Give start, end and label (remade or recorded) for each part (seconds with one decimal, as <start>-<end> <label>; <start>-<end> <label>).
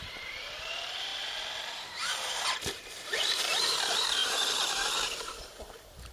0.0-1.1 remade; 1.1-1.7 recorded; 1.7-6.1 remade